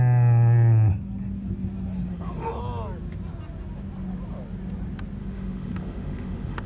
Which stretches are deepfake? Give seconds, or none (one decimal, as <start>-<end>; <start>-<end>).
2.1-2.6; 5.2-6.7